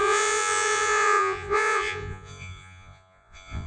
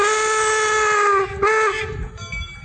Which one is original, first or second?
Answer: second